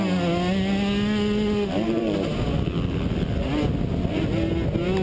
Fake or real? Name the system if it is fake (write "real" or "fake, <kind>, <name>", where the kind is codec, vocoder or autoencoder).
real